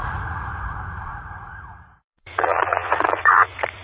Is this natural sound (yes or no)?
no